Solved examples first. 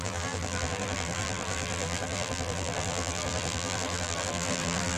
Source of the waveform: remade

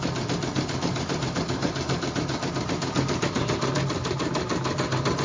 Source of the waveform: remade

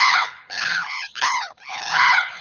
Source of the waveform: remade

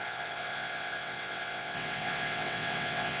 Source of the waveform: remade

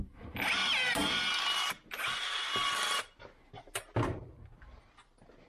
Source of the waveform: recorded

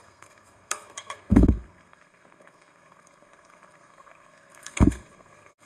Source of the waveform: remade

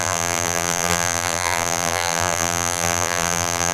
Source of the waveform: remade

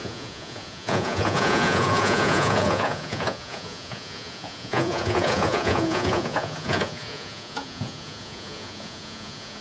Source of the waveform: remade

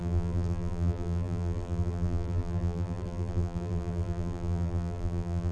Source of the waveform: remade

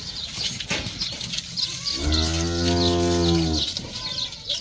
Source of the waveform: recorded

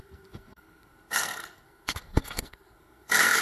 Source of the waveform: remade